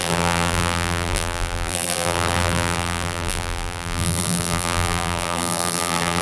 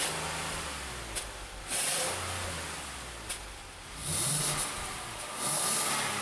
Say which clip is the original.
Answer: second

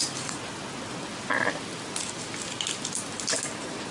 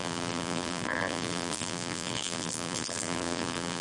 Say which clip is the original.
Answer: first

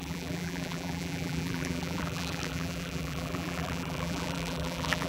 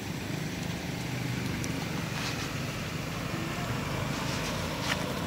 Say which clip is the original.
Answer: second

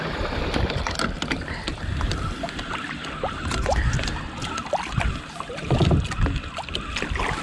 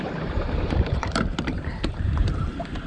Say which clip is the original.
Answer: first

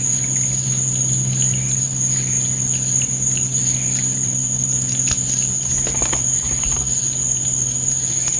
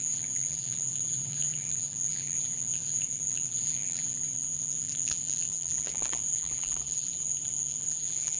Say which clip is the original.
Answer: first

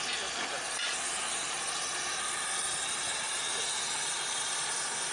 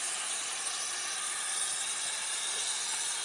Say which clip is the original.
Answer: first